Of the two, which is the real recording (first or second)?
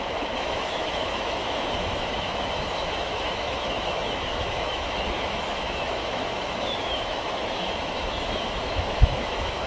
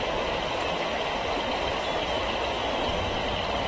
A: second